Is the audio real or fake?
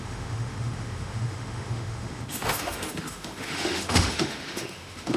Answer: fake